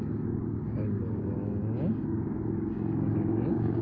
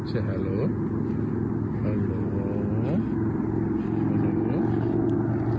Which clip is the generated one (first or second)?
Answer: first